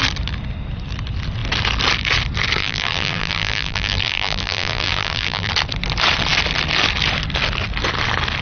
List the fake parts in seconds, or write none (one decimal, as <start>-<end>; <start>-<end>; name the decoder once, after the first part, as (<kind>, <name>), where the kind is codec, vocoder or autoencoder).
2.6-5.5 (vocoder, BigVGAN v2)